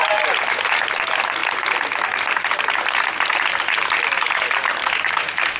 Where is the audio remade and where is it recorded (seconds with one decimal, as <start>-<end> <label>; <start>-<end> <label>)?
0.0-4.8 recorded; 4.8-5.6 remade